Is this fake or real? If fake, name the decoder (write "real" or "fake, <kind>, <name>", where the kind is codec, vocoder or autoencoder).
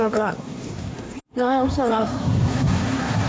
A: fake, codec, SNAC